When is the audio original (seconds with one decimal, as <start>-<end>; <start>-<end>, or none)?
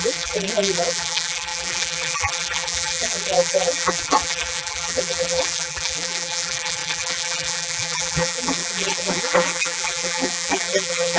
none